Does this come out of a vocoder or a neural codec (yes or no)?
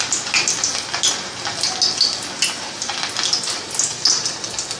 no